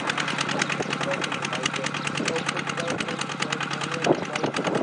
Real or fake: real